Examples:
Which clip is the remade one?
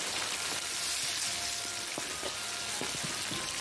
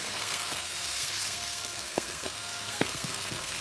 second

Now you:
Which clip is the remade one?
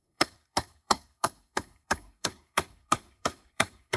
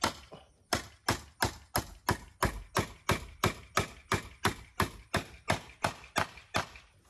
first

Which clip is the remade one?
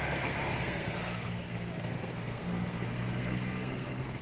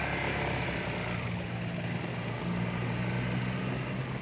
first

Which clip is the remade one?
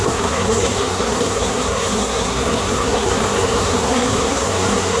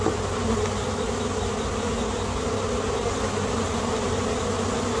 first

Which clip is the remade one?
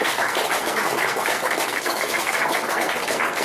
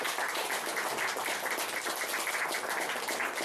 first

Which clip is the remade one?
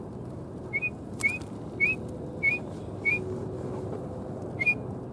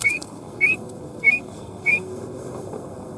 second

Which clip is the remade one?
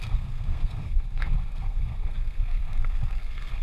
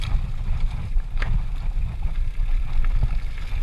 first